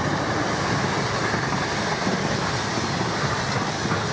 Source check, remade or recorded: recorded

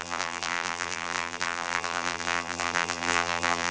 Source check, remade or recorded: remade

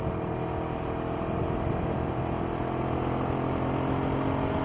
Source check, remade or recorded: recorded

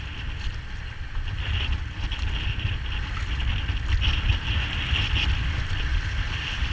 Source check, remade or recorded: recorded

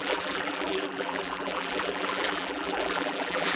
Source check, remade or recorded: remade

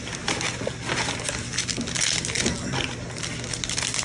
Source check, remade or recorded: recorded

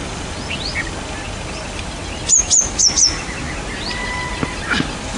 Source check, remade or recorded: recorded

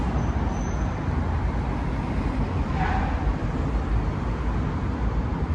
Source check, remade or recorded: recorded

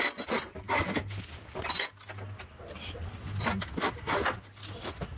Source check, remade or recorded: recorded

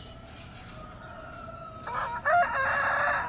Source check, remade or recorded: recorded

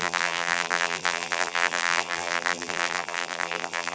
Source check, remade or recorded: remade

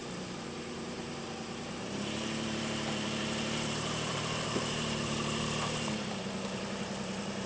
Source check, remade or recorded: remade